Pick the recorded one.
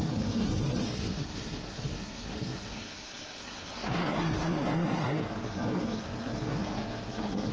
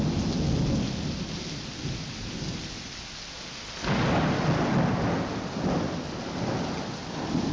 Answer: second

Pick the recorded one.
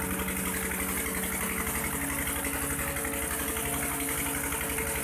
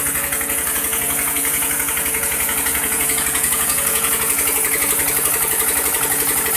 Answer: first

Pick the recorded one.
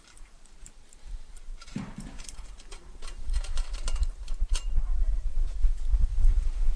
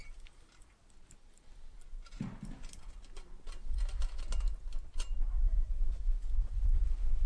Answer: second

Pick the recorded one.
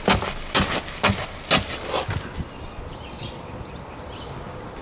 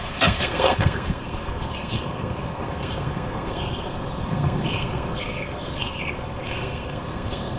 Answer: first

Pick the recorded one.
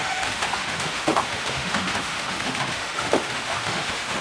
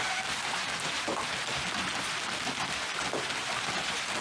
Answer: second